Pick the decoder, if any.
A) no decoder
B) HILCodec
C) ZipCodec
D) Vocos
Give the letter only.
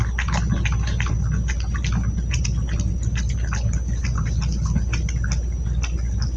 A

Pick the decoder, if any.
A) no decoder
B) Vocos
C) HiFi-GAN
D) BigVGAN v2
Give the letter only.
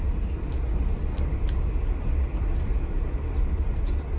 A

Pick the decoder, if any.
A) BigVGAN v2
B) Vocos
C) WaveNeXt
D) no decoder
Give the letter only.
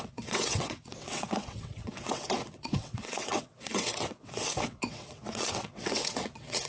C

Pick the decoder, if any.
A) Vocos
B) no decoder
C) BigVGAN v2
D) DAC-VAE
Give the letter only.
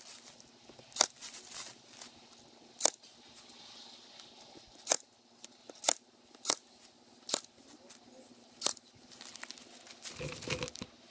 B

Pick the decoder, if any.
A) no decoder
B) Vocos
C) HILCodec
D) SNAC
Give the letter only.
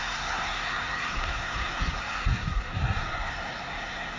D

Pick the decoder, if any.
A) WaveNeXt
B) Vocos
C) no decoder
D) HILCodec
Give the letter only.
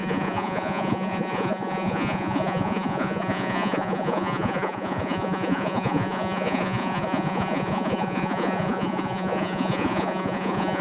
B